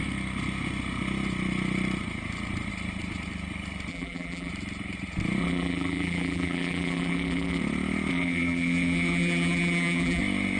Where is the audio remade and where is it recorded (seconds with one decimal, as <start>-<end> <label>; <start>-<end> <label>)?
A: 0.0-3.9 recorded; 3.9-4.5 remade; 4.5-5.4 recorded; 5.4-7.6 remade; 7.6-8.1 recorded; 8.1-10.2 remade; 10.2-10.6 recorded